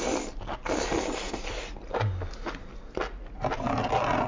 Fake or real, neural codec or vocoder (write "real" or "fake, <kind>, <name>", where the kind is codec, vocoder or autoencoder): real